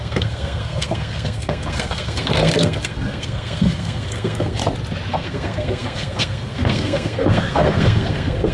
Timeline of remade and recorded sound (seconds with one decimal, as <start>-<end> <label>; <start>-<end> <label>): 0.0-4.6 remade; 4.6-5.1 recorded; 5.1-8.5 remade